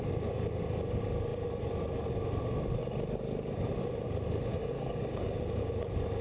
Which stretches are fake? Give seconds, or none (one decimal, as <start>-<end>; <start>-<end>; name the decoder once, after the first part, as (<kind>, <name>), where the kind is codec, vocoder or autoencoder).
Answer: 4.5-5.6 (codec, DAC)